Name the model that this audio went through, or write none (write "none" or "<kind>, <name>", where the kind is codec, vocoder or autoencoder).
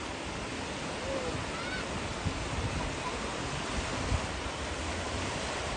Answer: none